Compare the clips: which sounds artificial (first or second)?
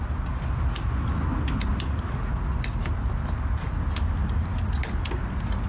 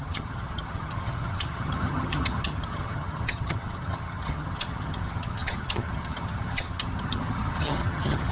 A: second